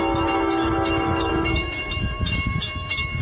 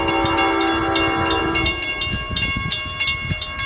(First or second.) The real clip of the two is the second